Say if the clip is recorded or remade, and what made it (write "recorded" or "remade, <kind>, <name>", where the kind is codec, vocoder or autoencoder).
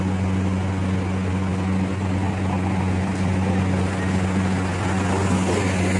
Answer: recorded